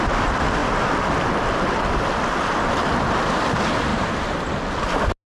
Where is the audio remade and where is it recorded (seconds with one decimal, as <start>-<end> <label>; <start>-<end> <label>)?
0.0-3.9 recorded; 3.9-4.5 remade; 4.5-5.3 recorded